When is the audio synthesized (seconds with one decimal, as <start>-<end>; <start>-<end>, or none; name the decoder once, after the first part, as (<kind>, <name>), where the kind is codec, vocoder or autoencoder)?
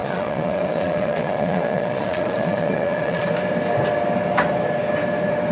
0.0-3.3 (vocoder, Vocos)